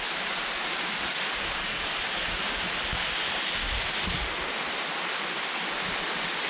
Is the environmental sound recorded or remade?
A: recorded